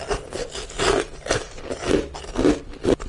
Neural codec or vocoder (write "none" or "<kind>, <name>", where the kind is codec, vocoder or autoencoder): none